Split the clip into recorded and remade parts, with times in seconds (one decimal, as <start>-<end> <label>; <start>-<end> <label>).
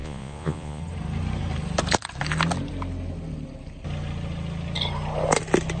0.0-0.8 remade; 0.8-5.8 recorded